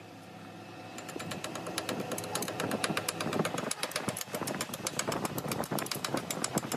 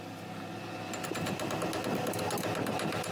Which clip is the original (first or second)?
second